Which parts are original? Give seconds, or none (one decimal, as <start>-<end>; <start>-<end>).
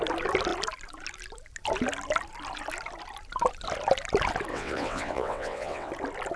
0.0-4.5; 5.9-6.4